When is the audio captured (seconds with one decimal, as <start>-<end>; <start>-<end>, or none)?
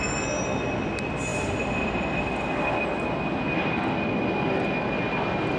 0.0-1.3; 2.5-5.6